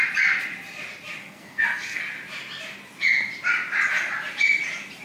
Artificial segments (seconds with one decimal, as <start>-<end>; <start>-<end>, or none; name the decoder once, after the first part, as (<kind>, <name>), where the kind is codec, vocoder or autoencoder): 1.2-2.0 (codec, SNAC)

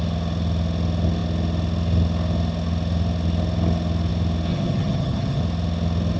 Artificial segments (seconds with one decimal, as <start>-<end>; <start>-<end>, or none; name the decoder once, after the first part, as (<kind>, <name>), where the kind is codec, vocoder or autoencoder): 4.5-5.4 (vocoder, HiFi-GAN)

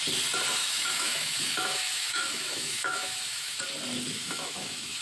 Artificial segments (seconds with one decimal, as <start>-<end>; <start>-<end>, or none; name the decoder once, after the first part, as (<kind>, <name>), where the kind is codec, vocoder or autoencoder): 0.6-3.6 (autoencoder, DAC-VAE); 4.1-5.0

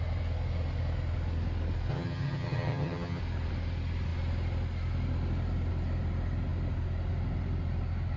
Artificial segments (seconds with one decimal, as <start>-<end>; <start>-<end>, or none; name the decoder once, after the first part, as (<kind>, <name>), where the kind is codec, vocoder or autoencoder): 1.9-3.2 (vocoder, HiFi-GAN)